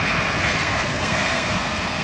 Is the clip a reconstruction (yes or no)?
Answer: yes